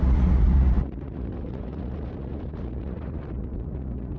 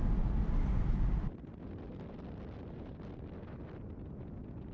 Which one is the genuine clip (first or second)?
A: second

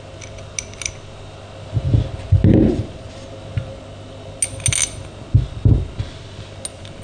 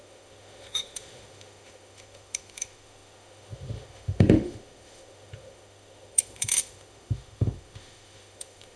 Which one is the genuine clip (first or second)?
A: first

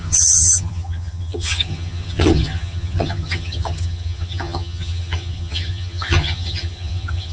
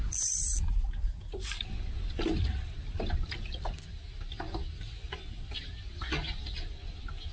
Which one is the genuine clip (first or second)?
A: second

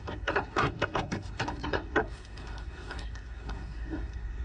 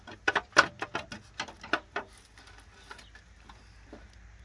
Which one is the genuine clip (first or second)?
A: second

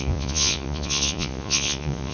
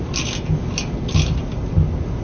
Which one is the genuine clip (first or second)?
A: second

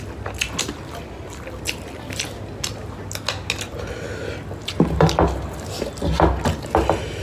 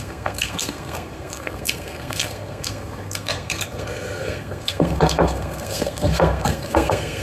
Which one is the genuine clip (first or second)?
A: first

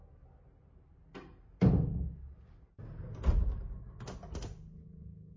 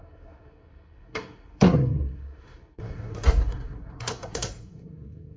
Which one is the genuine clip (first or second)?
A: first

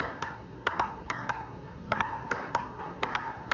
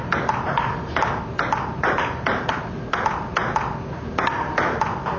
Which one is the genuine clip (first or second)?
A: second